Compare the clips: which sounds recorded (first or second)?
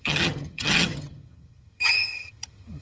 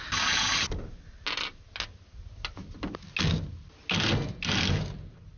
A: second